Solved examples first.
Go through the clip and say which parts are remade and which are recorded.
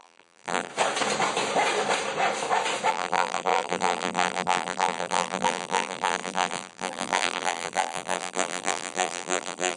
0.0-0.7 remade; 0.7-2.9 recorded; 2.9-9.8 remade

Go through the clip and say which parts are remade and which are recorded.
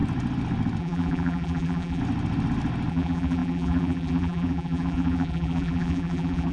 0.0-0.8 recorded; 0.8-2.0 remade; 2.0-2.9 recorded; 2.9-6.5 remade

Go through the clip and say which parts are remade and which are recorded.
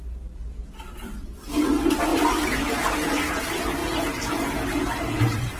0.0-5.6 recorded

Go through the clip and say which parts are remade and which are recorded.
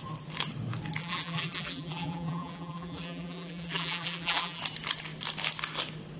0.0-1.0 recorded; 1.0-4.6 remade; 4.6-6.2 recorded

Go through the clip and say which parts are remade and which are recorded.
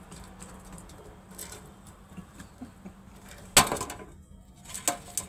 0.0-1.4 recorded; 1.4-2.5 remade; 2.5-5.3 recorded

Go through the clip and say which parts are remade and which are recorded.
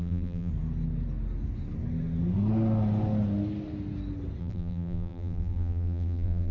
0.0-0.5 remade; 0.5-4.4 recorded; 4.4-6.5 remade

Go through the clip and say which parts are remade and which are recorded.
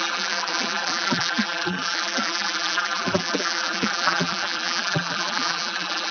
0.0-6.1 remade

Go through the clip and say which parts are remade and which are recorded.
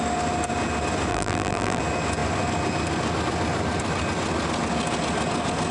0.0-1.1 recorded; 1.1-1.8 remade; 1.8-5.7 recorded